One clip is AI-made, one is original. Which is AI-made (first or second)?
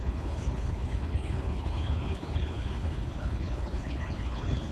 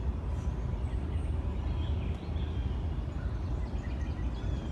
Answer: first